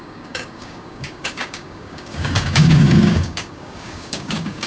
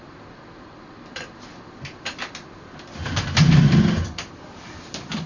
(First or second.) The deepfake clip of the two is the first